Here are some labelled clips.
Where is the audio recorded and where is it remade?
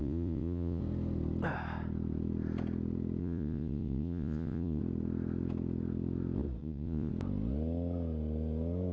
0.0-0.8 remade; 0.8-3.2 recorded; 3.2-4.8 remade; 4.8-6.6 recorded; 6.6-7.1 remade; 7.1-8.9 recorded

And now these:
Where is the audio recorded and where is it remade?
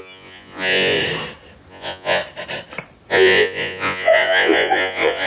0.0-1.0 remade; 1.0-1.7 recorded; 1.7-2.2 remade; 2.2-3.1 recorded; 3.1-5.3 remade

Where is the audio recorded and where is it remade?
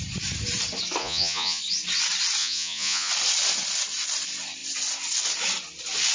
0.0-1.0 recorded; 1.0-1.6 remade; 1.6-2.4 recorded; 2.4-3.1 remade; 3.1-6.1 recorded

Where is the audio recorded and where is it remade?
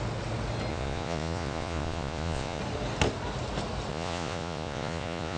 0.0-0.7 recorded; 0.7-2.6 remade; 2.6-3.9 recorded; 3.9-5.4 remade